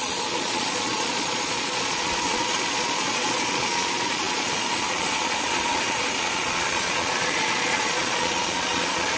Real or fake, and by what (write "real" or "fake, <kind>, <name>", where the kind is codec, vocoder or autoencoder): fake, vocoder, Vocos